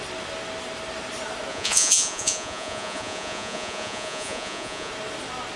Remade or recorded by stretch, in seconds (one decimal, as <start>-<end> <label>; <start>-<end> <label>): 0.0-1.5 recorded; 1.5-4.9 remade; 4.9-5.6 recorded